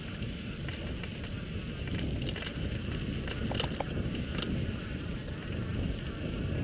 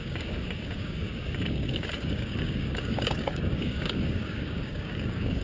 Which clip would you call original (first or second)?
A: first